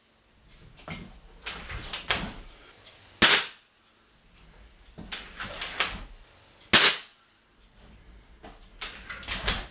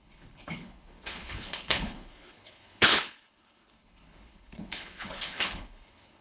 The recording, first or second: first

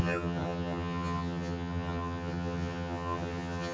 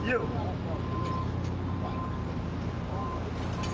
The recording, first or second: second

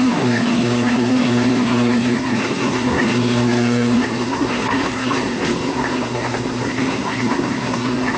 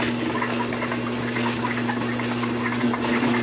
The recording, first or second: second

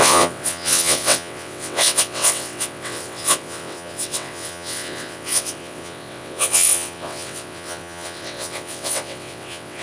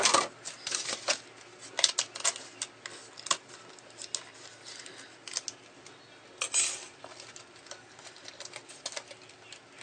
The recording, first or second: second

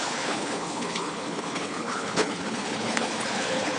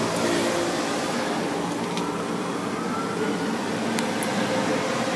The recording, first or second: second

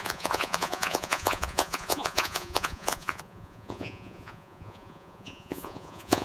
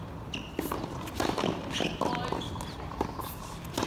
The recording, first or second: second